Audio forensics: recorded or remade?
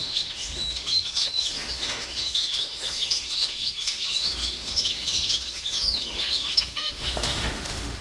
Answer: remade